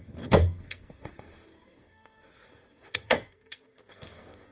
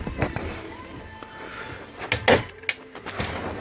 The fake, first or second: first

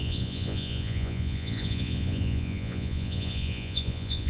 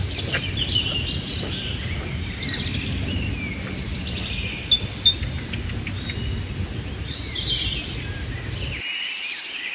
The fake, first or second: first